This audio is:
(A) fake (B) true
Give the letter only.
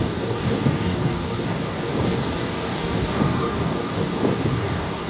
A